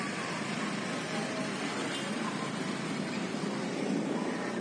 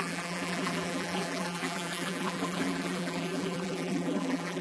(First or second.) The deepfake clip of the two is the second